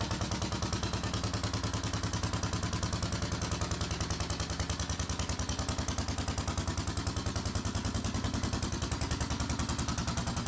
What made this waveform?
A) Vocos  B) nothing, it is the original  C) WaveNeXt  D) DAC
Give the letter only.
B